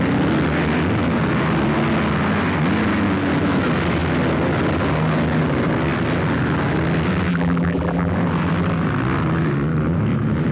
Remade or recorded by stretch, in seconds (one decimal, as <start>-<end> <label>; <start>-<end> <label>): 0.0-7.3 recorded; 7.3-8.1 remade; 8.1-10.5 recorded